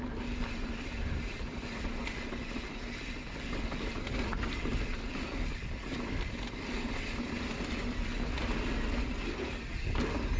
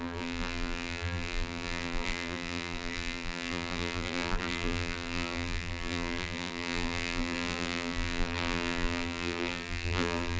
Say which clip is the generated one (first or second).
second